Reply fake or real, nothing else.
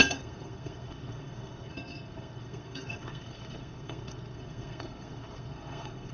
fake